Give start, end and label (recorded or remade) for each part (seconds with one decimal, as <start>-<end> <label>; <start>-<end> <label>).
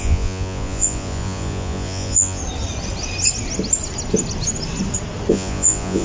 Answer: 0.0-2.4 remade; 2.4-5.3 recorded; 5.3-6.0 remade